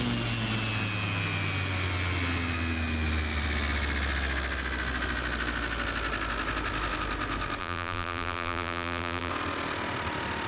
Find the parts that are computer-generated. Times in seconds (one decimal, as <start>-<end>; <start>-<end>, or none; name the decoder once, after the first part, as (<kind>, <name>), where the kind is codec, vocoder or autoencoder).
7.6-9.3 (vocoder, BigVGAN v2)